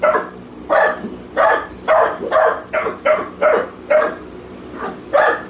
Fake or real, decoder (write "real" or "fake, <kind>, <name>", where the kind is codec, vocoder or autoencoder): real